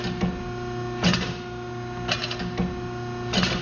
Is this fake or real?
real